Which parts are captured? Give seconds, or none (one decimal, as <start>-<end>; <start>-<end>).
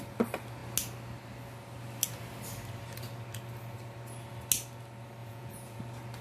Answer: 0.0-5.2; 5.8-6.2